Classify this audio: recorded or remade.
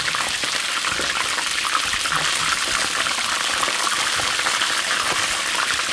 recorded